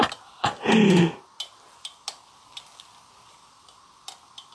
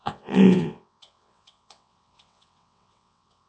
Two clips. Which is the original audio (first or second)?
first